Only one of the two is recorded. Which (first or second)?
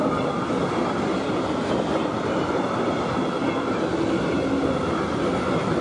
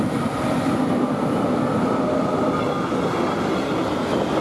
second